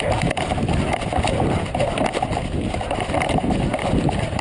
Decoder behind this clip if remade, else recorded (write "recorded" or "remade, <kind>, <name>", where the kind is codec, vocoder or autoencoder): recorded